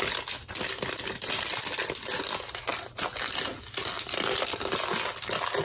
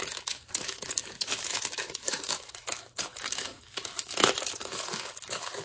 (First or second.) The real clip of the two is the first